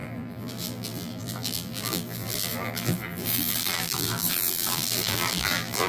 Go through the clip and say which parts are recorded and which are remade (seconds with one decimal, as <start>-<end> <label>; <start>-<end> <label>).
0.0-5.9 remade